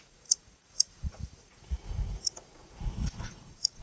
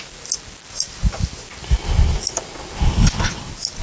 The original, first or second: second